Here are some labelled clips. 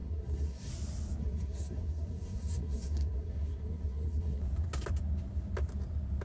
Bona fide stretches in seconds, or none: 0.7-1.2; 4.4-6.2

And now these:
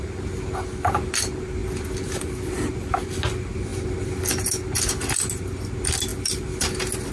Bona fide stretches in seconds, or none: 0.0-7.1

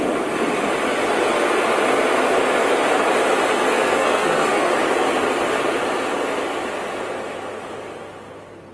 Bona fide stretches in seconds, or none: 0.0-3.6; 4.7-8.7

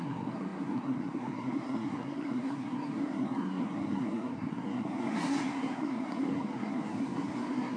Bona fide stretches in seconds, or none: none